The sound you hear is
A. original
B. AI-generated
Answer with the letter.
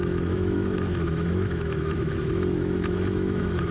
B